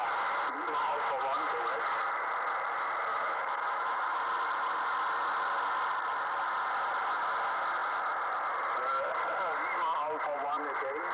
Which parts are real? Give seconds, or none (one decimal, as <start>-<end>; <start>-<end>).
0.0-3.1; 4.2-11.1